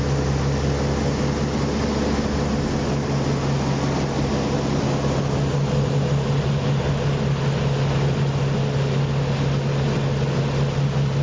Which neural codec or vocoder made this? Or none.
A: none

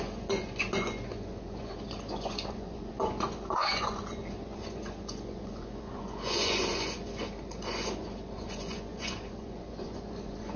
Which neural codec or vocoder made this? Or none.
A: vocoder, Vocos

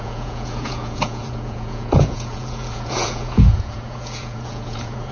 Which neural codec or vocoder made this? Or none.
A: vocoder, Vocos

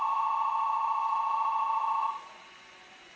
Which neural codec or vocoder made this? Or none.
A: vocoder, Vocos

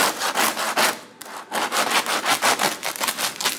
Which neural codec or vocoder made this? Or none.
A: none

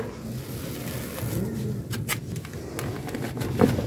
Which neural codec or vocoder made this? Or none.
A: none